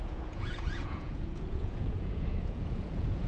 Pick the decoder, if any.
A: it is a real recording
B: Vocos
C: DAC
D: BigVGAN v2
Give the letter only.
B